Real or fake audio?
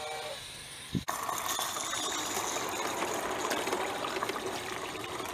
real